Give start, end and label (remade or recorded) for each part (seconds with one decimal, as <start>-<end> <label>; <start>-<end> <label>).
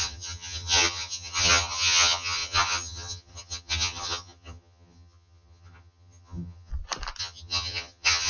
0.0-6.7 remade; 6.7-7.2 recorded; 7.2-8.3 remade